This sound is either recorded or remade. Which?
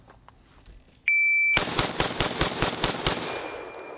recorded